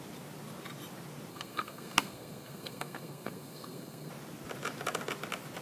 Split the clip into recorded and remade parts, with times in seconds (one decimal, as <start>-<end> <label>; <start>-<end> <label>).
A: 0.0-1.3 recorded; 1.3-4.1 remade; 4.1-5.6 recorded